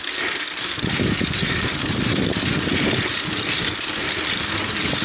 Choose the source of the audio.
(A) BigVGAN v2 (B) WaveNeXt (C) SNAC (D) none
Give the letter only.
D